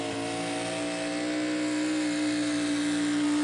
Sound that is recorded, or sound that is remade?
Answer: recorded